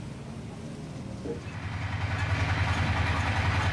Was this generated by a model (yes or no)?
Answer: no